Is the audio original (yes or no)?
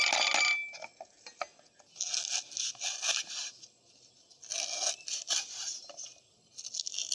yes